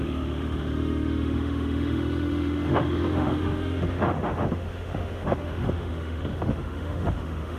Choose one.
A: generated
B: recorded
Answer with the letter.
A